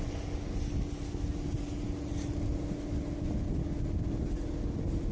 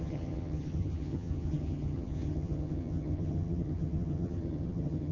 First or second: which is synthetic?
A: second